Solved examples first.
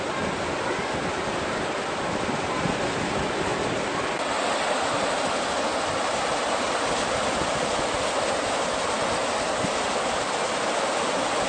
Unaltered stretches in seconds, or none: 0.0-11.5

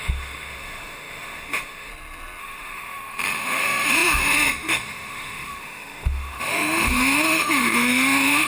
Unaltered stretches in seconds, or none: 1.9-2.4

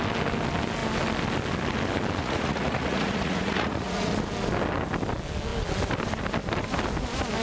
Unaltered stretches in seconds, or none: 0.0-2.2; 4.1-7.4

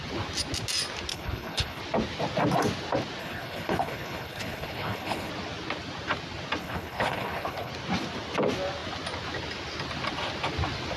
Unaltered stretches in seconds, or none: 0.0-1.1; 1.8-3.2; 5.3-6.6; 7.7-11.0

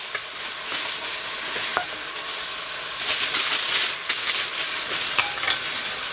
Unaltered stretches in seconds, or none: 0.0-6.1

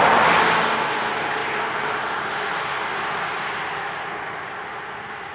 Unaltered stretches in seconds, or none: 0.0-5.3